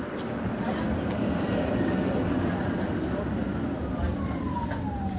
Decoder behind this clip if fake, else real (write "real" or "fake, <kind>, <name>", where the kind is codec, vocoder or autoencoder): real